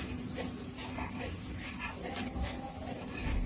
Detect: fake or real real